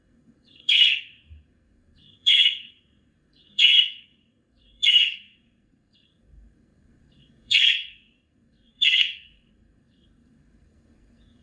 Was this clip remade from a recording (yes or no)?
yes